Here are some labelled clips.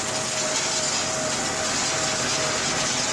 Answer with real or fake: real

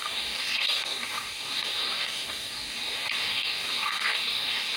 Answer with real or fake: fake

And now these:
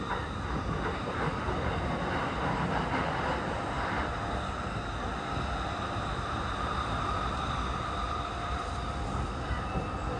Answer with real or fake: real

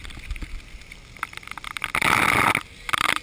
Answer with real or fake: real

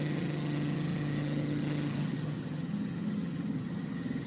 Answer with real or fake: fake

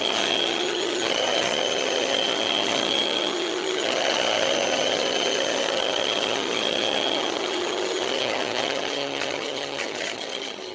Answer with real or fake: fake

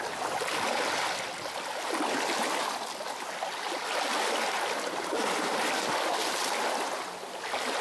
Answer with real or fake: real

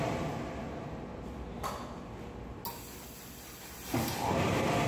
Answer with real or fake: real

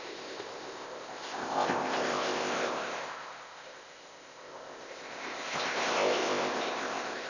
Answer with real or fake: fake